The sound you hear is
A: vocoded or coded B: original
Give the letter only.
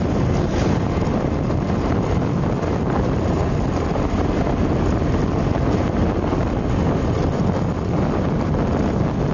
B